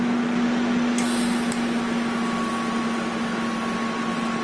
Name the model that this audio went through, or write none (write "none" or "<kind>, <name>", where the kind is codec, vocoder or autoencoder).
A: none